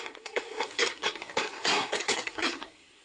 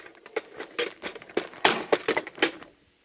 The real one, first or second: second